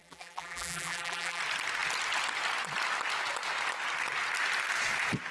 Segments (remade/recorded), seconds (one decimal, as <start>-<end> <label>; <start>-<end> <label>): 0.0-1.4 remade; 1.4-5.3 recorded